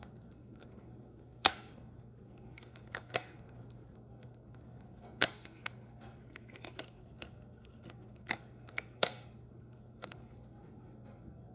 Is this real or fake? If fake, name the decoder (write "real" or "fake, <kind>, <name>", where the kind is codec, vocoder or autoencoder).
fake, codec, SNAC